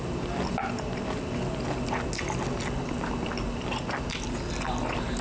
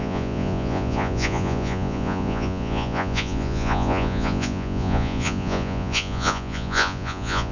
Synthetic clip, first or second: second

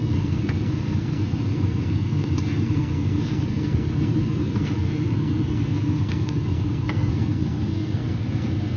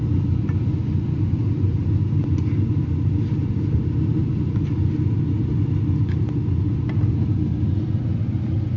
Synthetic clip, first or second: first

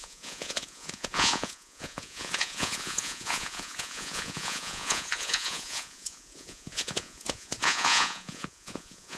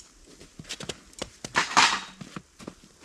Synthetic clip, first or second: first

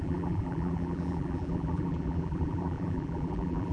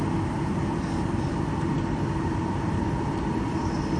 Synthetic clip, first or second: first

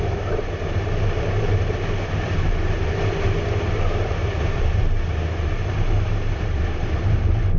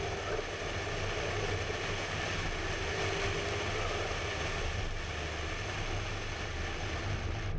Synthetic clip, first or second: first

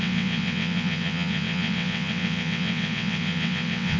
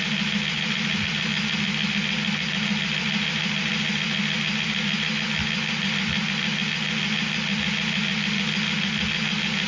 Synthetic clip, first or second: first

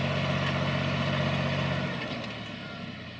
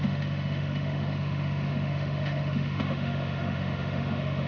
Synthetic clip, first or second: second